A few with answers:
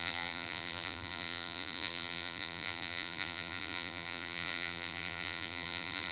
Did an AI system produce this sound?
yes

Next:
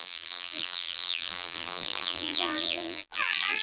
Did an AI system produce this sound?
yes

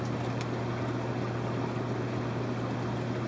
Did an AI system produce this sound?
no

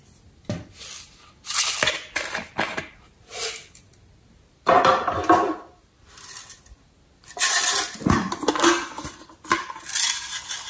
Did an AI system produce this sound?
no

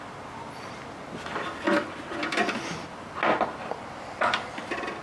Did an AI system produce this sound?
no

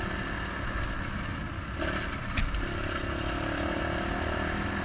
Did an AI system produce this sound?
no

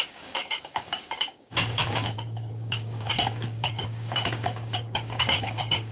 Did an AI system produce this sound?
yes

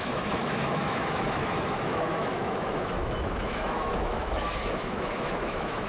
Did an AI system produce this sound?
yes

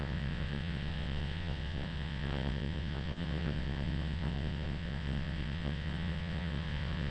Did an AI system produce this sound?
yes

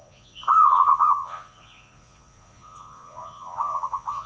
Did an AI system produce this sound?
yes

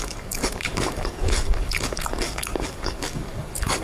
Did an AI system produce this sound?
yes